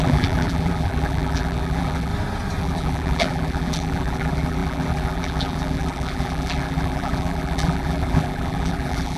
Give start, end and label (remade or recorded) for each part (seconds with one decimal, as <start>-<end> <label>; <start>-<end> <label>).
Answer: 0.0-2.1 remade; 2.1-2.6 recorded; 2.6-9.2 remade